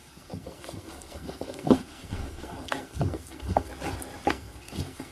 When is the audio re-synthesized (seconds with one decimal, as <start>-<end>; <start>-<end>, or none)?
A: 0.0-3.7; 4.3-5.1

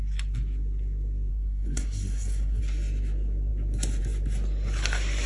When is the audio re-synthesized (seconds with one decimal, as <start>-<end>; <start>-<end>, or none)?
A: 1.3-2.6

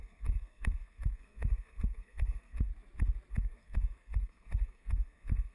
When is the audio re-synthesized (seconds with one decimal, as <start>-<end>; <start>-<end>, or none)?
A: 0.0-2.7; 3.3-5.5